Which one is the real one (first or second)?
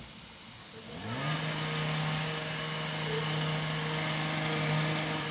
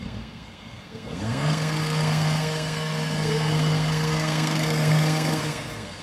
first